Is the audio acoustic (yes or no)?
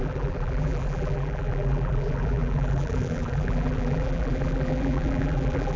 no